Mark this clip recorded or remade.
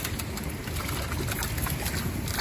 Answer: recorded